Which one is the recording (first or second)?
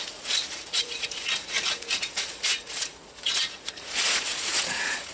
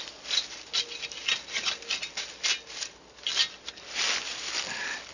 second